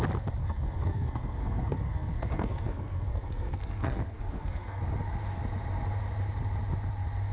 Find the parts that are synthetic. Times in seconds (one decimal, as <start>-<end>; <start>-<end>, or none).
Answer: 0.4-4.8